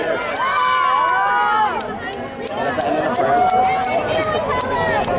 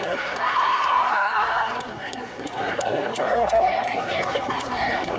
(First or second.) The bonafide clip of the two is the first